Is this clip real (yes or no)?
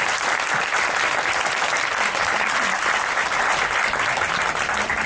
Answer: no